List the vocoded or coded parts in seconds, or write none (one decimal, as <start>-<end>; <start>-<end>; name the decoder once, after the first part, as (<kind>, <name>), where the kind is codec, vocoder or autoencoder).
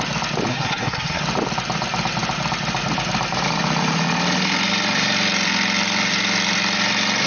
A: 0.5-1.2 (codec, SNAC)